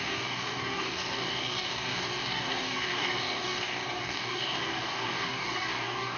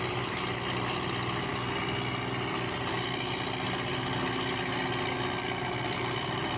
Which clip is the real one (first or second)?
second